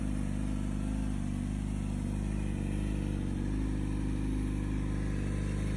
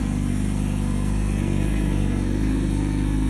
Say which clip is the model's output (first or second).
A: second